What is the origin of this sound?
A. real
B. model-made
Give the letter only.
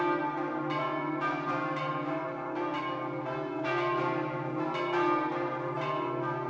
A